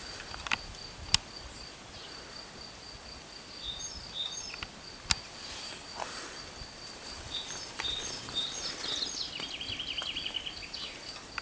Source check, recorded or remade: recorded